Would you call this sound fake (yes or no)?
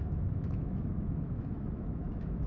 yes